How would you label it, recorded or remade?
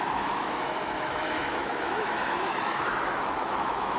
remade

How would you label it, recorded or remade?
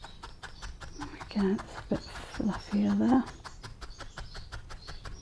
recorded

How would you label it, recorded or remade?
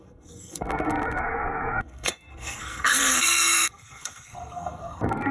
remade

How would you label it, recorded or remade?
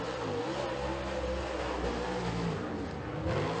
recorded